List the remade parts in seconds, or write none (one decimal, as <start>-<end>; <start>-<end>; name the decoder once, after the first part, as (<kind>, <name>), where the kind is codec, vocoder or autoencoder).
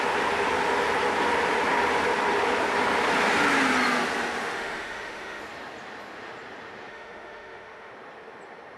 4.4-5.4 (autoencoder, DAC-VAE); 6.9-7.9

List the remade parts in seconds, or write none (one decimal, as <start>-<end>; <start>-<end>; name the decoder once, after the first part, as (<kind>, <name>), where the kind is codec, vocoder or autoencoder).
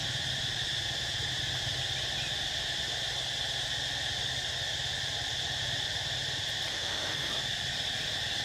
6.7-7.3 (autoencoder, DAC-VAE)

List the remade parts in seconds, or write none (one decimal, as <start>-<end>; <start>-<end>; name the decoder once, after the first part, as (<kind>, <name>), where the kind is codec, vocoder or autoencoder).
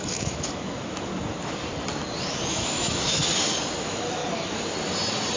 0.0-1.1 (autoencoder, DAC-VAE); 2.5-3.2; 3.8-4.2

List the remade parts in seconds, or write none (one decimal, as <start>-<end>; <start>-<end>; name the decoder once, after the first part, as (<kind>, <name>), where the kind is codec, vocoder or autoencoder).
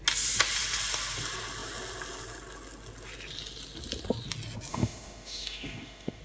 4.7-6.2 (autoencoder, DAC-VAE)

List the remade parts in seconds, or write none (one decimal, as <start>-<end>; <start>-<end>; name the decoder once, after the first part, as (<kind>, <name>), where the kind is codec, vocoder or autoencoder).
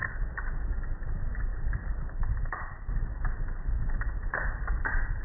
none